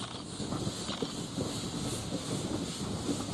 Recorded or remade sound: recorded